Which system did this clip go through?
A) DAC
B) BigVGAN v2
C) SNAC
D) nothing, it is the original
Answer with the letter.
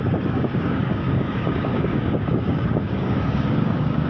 A